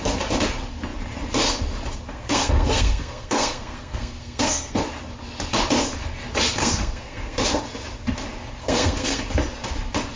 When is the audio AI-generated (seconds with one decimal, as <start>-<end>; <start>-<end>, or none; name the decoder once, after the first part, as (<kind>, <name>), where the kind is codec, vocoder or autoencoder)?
2.1-4.8 (codec, SNAC); 6.6-7.6; 8.6-9.2